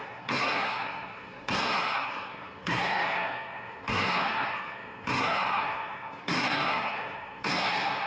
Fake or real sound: fake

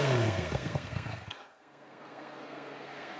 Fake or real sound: fake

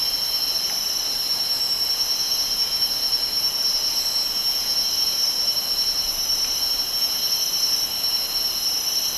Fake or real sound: real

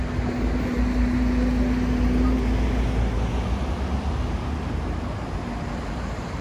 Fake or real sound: real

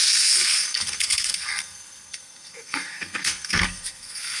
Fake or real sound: fake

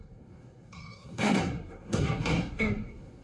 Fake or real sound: fake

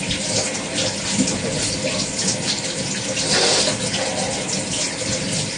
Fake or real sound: real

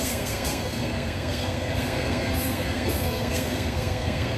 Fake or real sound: fake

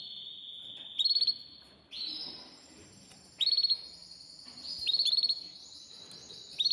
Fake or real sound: real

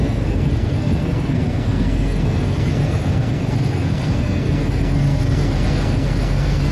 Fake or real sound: fake